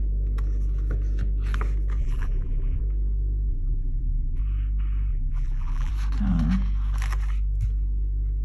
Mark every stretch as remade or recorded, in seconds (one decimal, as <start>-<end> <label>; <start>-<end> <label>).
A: 0.0-2.0 recorded; 2.0-2.8 remade; 2.8-3.5 recorded; 3.5-4.4 remade; 4.4-5.1 recorded; 5.1-5.9 remade; 5.9-8.4 recorded